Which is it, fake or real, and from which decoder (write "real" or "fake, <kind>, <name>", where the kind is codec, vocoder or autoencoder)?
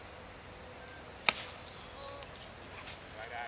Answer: real